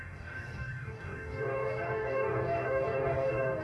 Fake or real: fake